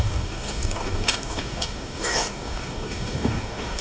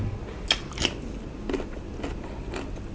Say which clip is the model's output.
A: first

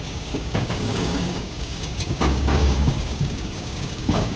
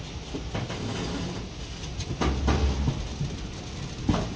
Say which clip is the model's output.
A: first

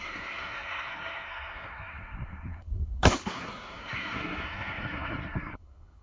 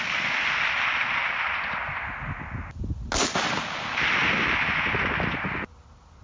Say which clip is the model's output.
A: first